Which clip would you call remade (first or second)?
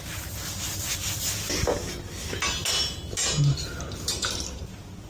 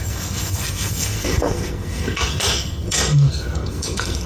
second